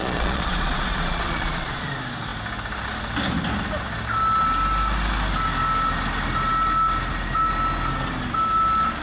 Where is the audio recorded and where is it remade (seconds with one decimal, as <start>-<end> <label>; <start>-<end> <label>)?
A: 0.0-1.8 remade; 1.8-9.0 recorded